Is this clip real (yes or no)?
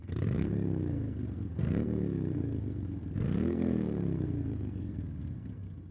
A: no